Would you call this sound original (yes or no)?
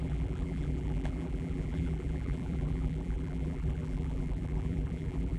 no